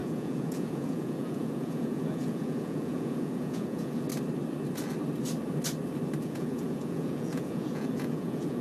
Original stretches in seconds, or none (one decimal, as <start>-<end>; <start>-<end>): 4.1-6.2